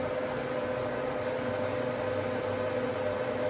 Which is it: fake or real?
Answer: real